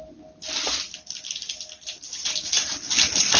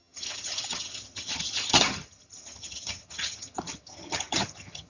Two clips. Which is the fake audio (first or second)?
second